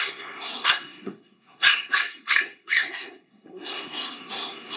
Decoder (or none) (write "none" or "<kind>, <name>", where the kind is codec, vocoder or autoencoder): codec, SNAC